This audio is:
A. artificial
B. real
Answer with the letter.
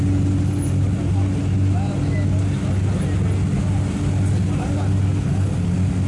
B